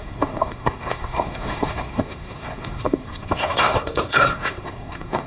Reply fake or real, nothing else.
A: fake